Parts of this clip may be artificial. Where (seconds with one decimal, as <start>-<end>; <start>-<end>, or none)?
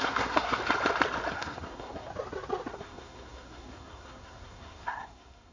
0.0-0.6; 1.3-2.1; 2.7-5.5